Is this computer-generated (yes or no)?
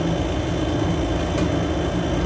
no